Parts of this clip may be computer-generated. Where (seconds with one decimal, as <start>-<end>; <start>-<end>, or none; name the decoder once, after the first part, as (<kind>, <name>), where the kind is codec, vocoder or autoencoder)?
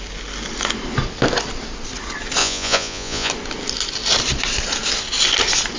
2.4-3.3 (vocoder, Vocos)